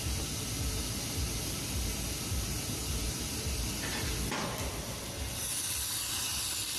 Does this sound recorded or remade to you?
recorded